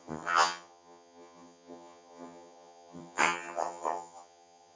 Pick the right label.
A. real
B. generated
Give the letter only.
B